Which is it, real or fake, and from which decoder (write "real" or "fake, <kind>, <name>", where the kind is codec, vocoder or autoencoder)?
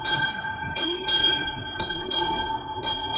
fake, codec, SNAC